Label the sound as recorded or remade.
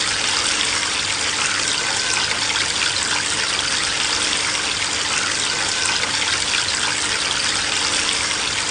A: recorded